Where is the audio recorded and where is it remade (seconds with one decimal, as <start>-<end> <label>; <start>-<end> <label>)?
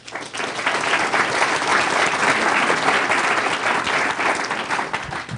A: 0.0-5.4 recorded